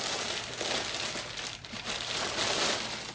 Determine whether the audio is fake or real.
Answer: real